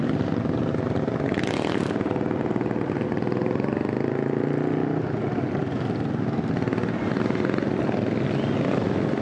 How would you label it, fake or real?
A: real